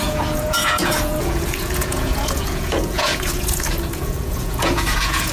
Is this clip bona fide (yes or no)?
no